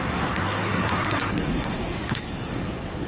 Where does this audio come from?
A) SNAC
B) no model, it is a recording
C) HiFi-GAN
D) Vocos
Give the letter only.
A